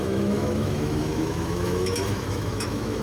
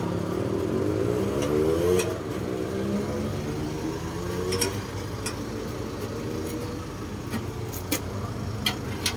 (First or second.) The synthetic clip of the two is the first